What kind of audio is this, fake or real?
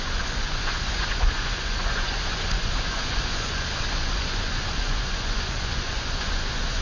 fake